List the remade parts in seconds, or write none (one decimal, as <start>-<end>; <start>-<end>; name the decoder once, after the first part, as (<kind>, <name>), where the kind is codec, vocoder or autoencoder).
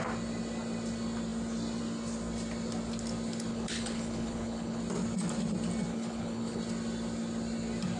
3.5-4.8 (codec, HILCodec); 5.9-6.6